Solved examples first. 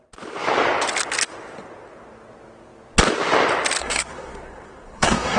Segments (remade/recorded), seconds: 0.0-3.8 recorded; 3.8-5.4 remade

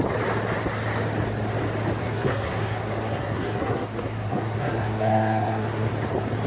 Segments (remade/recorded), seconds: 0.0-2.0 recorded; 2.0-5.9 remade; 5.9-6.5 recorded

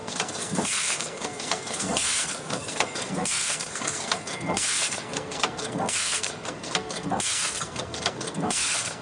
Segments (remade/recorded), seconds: 0.0-9.0 remade

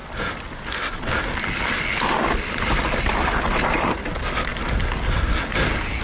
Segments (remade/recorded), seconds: 0.0-6.0 recorded